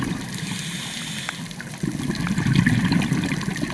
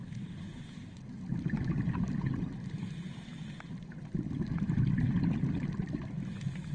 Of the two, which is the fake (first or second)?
second